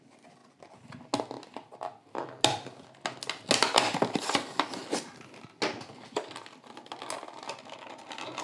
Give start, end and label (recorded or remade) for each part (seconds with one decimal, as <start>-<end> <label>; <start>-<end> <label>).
0.0-8.4 recorded

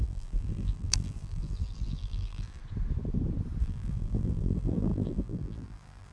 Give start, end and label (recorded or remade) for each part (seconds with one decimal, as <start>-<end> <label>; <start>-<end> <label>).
0.0-2.6 remade; 2.6-3.6 recorded; 3.6-6.1 remade

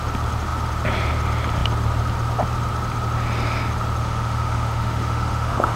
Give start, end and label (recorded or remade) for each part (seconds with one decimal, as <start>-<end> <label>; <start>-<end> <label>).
0.0-4.0 recorded; 4.0-5.8 remade

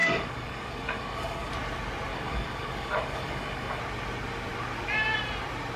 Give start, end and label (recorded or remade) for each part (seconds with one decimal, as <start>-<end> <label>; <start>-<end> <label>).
0.0-1.5 remade; 1.5-2.1 recorded; 2.1-3.8 remade; 3.8-5.8 recorded